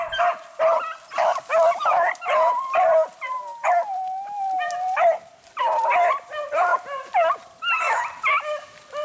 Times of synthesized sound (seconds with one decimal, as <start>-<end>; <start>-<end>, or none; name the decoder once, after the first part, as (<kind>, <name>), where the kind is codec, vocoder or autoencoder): none